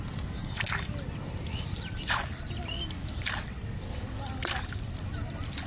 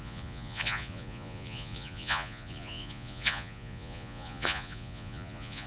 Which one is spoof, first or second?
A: second